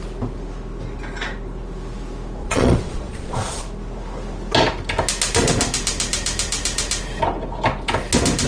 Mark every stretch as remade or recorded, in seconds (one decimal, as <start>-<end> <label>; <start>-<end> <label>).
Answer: 0.0-2.4 recorded; 2.4-3.6 remade; 3.6-8.5 recorded